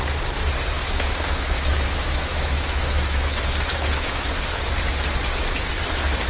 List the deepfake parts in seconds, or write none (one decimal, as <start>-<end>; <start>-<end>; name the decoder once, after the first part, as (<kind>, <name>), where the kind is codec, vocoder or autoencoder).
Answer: 0.8-4.6 (autoencoder, DAC-VAE)